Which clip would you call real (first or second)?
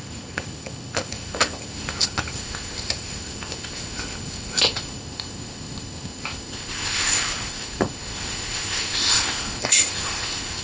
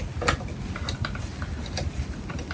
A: second